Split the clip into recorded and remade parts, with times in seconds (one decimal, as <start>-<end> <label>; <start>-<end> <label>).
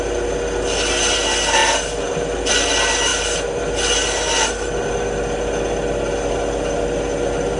0.0-7.6 recorded